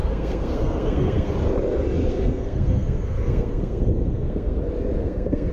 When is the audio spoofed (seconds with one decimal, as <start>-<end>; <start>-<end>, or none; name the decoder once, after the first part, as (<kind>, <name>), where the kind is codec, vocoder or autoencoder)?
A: 0.0-1.3 (codec, SNAC); 2.0-4.6; 5.0-5.5